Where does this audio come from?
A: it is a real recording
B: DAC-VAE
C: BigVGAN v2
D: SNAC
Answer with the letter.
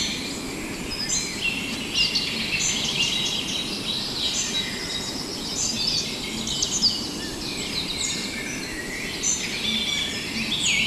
A